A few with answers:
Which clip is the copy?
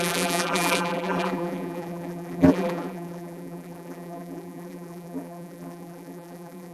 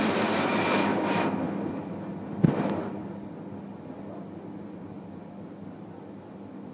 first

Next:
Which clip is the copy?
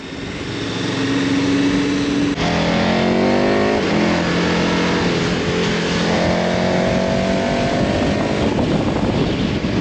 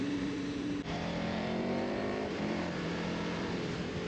second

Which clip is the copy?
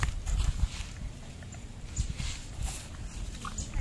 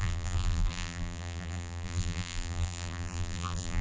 second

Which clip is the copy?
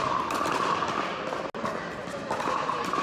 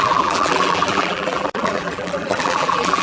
second